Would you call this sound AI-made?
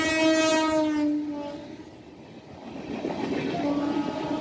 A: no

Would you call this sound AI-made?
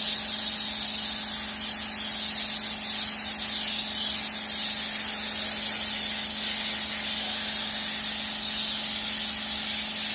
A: no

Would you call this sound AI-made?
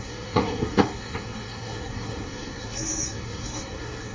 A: yes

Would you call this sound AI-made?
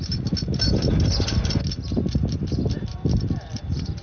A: no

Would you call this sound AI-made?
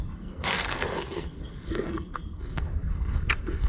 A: yes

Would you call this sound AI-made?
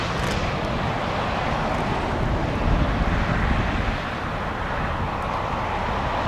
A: no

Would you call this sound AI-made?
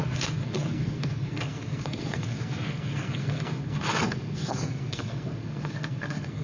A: yes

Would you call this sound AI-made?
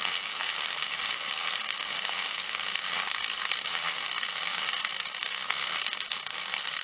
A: yes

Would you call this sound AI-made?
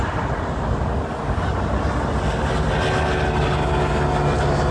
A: no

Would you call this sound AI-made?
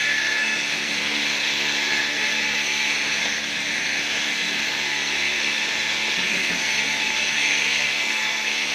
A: yes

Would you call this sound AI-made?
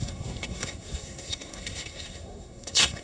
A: yes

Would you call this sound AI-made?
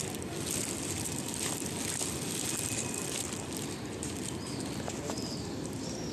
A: no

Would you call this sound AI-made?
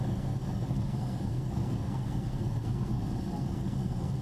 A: yes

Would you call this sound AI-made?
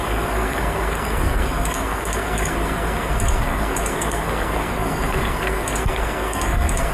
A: yes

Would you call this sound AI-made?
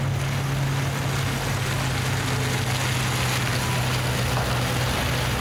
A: no